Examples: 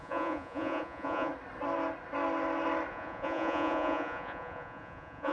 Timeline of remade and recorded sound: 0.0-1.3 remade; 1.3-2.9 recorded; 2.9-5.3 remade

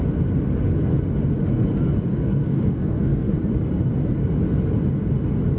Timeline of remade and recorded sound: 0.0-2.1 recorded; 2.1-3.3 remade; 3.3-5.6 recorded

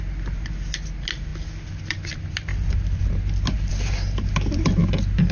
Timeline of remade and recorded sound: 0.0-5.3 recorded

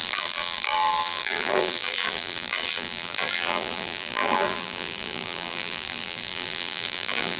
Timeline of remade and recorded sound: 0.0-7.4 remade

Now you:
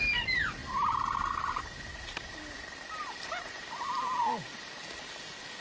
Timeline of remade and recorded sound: 0.0-5.6 recorded

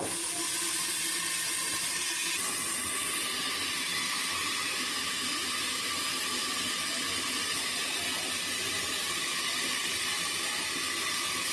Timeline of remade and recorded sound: 0.0-11.5 recorded